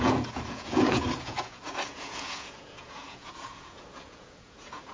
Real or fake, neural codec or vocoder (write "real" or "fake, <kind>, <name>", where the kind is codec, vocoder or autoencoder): fake, vocoder, Vocos